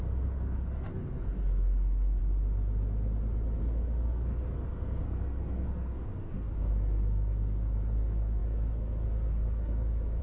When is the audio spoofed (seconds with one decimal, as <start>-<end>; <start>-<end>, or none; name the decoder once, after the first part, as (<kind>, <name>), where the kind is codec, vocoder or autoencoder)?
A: 0.0-2.2 (codec, SNAC); 3.6-10.2

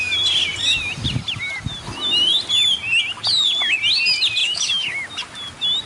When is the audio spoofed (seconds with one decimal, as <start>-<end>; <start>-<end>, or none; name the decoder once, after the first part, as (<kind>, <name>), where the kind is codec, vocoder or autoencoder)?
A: 4.4-5.1 (autoencoder, DAC-VAE)

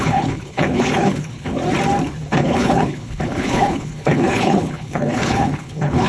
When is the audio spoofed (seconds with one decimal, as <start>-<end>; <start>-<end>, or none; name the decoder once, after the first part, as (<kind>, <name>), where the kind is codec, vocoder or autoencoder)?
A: 0.0-1.6 (codec, HILCodec); 2.3-6.1